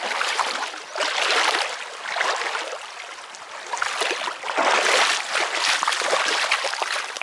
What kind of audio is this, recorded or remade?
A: recorded